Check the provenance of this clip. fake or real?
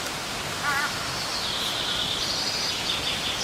real